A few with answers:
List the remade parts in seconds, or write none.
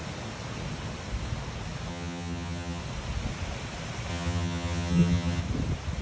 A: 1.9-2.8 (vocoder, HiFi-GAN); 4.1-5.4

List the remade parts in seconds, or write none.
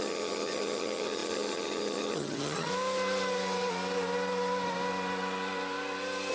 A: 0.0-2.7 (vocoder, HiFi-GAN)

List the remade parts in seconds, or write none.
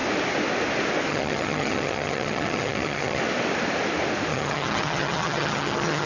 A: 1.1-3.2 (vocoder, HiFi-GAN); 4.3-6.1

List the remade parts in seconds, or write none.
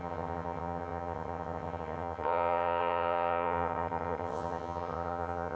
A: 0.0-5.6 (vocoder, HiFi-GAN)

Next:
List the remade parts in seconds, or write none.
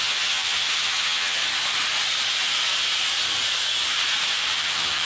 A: 0.0-1.4 (vocoder, HiFi-GAN); 4.5-5.1